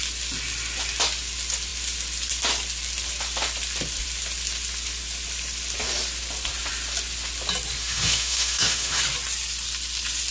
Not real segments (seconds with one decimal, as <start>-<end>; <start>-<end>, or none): 7.8-9.0